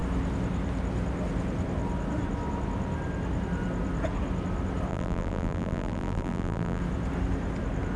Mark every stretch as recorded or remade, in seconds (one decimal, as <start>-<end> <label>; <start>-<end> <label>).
0.0-4.9 recorded; 4.9-6.8 remade; 6.8-8.0 recorded